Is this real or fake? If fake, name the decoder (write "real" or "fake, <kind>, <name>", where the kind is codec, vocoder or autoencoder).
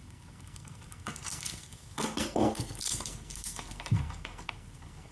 fake, codec, SNAC